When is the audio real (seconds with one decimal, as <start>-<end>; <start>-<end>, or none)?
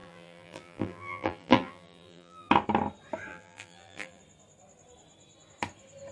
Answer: 2.5-3.3; 4.2-6.1